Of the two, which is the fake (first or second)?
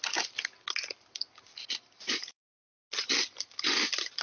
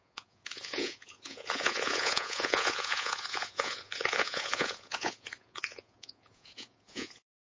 second